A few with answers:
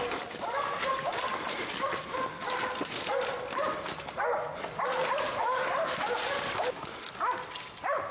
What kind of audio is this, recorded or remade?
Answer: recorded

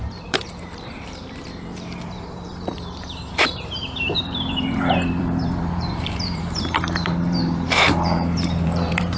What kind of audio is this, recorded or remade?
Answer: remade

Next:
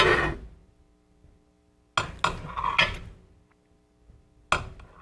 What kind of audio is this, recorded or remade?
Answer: recorded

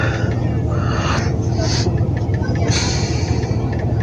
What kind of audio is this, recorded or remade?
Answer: recorded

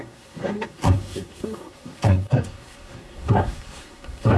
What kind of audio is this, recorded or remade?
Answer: remade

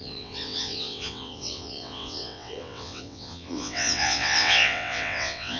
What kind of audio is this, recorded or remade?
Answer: remade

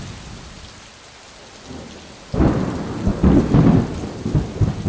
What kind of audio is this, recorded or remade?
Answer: recorded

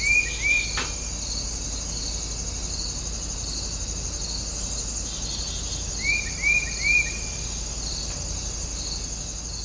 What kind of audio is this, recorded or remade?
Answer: recorded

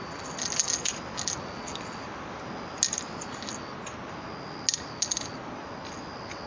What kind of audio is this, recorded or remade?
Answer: recorded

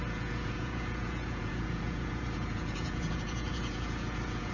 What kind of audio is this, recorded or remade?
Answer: remade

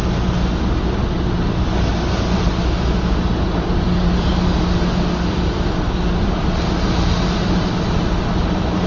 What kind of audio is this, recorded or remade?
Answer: recorded